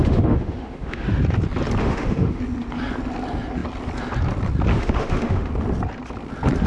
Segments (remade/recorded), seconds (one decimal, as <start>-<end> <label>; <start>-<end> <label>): 0.0-1.2 remade; 1.2-1.8 recorded; 1.8-2.4 remade; 2.4-4.7 recorded; 4.7-5.5 remade; 5.5-6.7 recorded